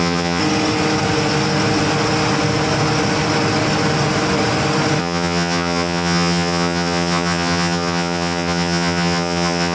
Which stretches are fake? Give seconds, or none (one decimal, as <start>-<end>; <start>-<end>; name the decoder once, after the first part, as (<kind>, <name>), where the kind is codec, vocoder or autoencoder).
0.0-0.4 (vocoder, HiFi-GAN); 5.0-9.7